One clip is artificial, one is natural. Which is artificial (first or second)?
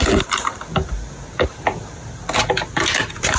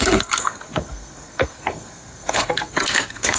second